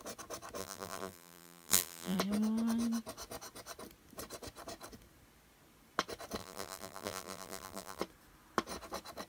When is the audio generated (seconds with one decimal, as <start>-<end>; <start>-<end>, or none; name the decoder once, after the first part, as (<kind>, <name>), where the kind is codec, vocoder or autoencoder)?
0.6-2.2 (vocoder, BigVGAN v2); 6.4-8.0